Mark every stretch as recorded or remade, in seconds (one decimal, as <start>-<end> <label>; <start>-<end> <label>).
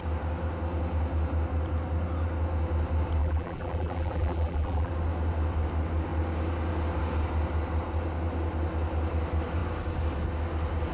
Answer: 0.0-3.2 recorded; 3.2-4.9 remade; 4.9-10.9 recorded